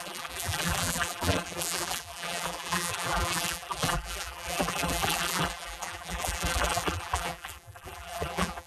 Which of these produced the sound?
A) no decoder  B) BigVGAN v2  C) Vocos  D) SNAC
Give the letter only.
B